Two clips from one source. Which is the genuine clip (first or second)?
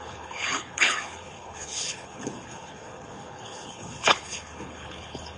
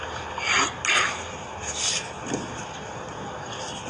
second